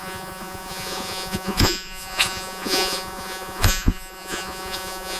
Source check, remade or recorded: remade